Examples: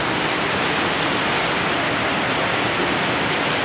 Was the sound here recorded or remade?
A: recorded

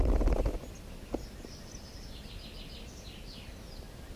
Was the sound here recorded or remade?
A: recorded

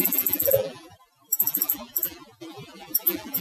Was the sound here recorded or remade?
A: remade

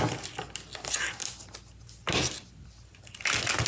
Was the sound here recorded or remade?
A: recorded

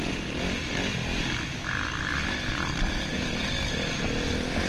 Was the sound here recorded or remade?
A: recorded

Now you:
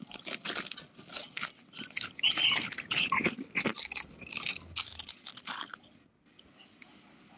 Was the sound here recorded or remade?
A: recorded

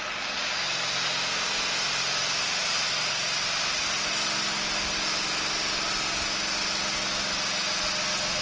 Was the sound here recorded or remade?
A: recorded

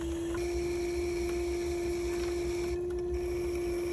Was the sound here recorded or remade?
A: recorded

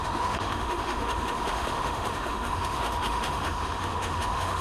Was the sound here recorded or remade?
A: remade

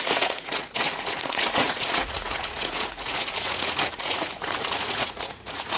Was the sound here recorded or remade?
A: remade